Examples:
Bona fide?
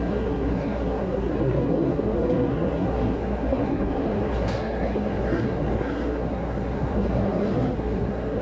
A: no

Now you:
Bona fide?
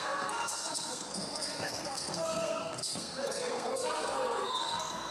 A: no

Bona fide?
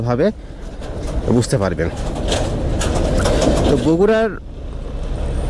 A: yes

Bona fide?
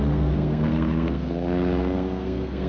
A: no